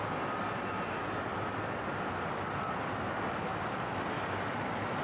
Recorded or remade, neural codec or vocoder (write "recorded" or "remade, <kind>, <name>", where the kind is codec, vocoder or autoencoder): recorded